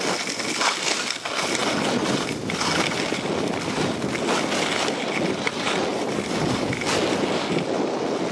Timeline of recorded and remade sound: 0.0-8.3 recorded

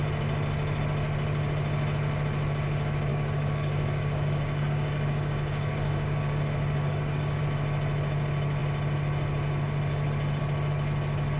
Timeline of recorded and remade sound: 0.0-3.1 recorded; 3.1-7.4 remade; 7.4-11.4 recorded